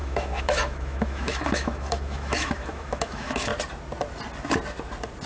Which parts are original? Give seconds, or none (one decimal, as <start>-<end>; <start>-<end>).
3.5-5.3